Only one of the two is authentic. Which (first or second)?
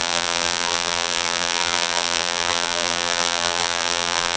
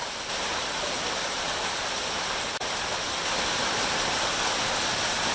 second